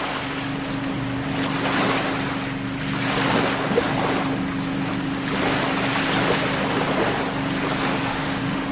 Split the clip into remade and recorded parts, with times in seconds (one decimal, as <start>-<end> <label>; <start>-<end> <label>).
0.0-7.9 recorded; 7.9-8.7 remade